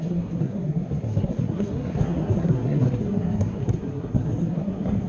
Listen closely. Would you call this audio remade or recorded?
remade